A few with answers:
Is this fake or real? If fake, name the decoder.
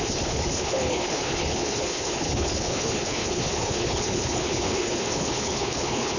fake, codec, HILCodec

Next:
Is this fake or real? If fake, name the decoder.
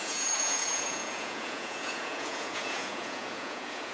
fake, vocoder, Vocos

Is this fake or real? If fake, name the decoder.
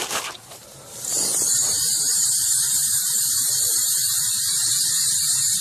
fake, vocoder, BigVGAN v2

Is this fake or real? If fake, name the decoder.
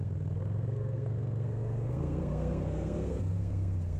fake, codec, SNAC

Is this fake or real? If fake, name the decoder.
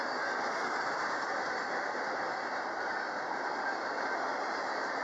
real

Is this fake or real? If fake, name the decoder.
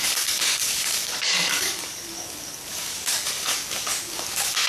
fake, codec, DAC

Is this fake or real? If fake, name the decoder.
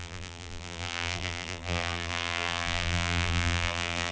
fake, vocoder, BigVGAN v2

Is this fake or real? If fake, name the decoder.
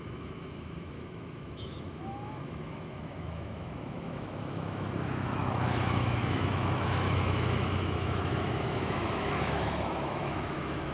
fake, autoencoder, DAC-VAE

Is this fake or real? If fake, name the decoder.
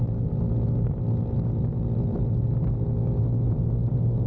real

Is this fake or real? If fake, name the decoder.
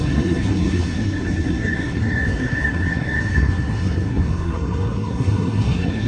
fake, codec, SNAC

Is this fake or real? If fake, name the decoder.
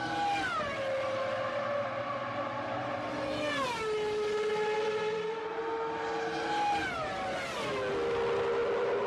real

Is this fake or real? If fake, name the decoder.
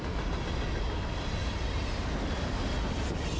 real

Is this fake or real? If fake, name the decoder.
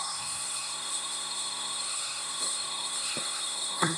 fake, codec, SNAC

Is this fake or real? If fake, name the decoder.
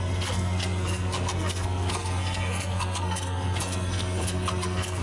fake, codec, SNAC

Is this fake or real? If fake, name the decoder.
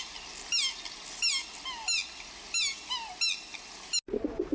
real